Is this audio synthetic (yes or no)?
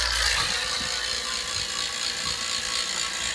no